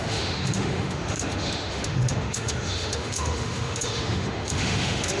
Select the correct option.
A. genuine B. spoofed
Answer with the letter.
B